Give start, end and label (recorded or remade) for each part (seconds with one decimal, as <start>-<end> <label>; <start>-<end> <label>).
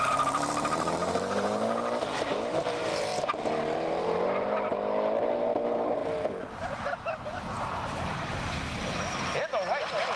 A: 0.0-3.1 remade; 3.1-3.7 recorded; 3.7-4.7 remade; 4.7-5.2 recorded; 5.2-6.0 remade; 6.0-10.2 recorded